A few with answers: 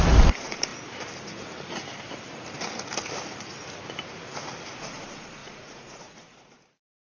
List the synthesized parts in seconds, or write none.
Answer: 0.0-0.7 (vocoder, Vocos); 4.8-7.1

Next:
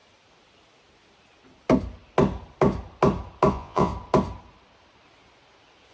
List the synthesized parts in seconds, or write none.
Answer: 3.5-3.9 (vocoder, Vocos)

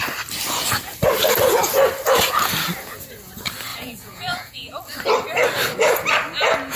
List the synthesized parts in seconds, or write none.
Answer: 3.7-4.8 (vocoder, Vocos)

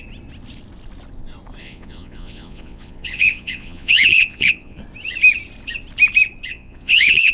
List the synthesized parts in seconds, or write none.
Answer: 1.6-4.8 (vocoder, Vocos); 6.5-7.3

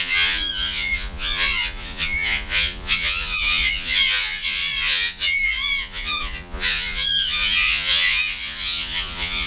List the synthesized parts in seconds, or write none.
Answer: 0.0-9.5 (vocoder, Vocos)